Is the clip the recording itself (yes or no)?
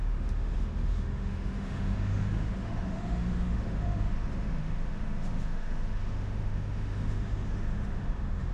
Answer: no